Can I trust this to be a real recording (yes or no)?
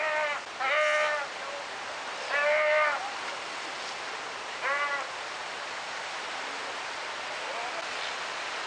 yes